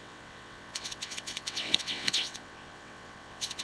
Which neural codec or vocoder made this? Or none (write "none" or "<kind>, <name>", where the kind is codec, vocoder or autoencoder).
vocoder, WaveNeXt